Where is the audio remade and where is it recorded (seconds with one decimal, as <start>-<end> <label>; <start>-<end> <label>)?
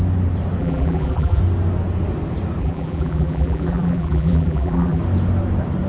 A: 0.0-0.6 recorded; 0.6-1.4 remade; 1.4-2.6 recorded; 2.6-5.0 remade; 5.0-5.9 recorded